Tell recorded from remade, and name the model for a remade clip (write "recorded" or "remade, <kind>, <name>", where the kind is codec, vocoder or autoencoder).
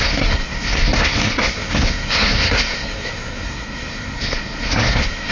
remade, codec, SNAC